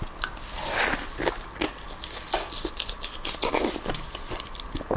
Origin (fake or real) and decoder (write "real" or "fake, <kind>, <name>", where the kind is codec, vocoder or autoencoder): real